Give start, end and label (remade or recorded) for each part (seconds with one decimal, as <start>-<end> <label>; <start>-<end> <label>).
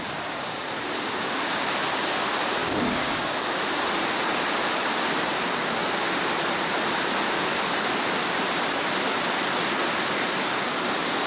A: 0.0-2.6 recorded; 2.6-3.6 remade; 3.6-11.3 recorded